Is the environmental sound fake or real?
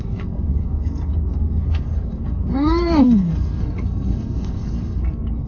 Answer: fake